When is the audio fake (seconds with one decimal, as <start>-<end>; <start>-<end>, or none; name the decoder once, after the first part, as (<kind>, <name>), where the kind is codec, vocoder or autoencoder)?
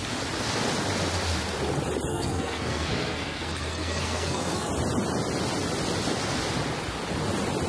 2.1-4.7 (codec, SNAC)